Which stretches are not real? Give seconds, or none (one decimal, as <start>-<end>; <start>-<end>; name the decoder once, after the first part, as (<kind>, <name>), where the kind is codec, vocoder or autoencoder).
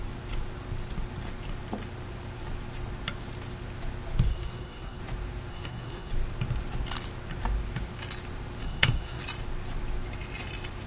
4.3-5.0 (codec, SNAC); 5.5-6.1; 8.6-9.2